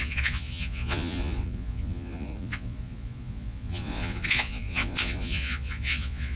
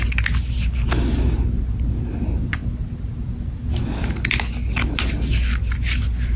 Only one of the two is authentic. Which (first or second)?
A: second